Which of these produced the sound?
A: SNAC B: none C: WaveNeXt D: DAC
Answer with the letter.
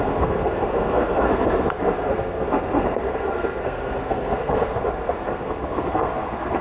A